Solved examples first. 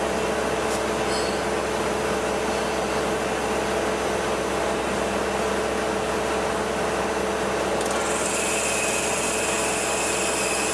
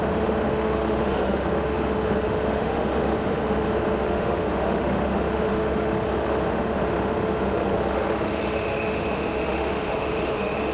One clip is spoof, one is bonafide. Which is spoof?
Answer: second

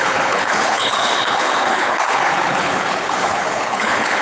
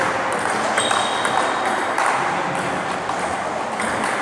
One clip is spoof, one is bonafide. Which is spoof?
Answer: first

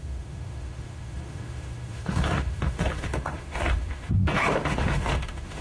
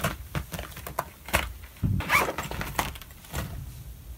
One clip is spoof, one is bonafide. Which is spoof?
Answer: first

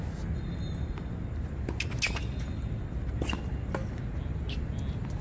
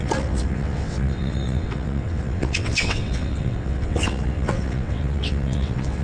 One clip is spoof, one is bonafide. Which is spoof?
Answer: second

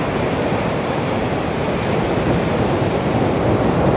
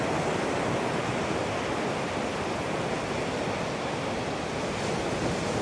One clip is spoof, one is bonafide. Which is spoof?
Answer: first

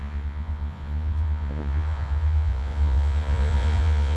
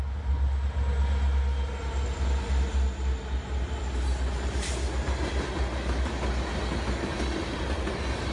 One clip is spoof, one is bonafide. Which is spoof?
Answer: first